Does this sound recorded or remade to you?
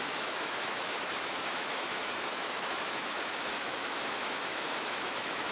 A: remade